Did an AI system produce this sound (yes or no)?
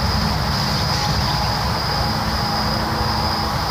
no